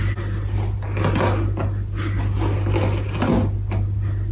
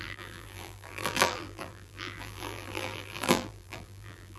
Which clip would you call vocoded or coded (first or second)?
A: second